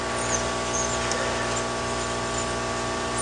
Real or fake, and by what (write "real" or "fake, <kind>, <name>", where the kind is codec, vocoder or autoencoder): real